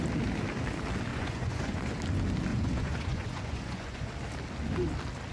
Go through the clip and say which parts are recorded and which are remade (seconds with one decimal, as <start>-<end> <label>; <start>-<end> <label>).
0.0-1.1 recorded; 1.1-1.8 remade; 1.8-2.5 recorded; 2.5-4.1 remade; 4.1-5.3 recorded